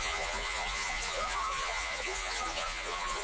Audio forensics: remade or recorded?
remade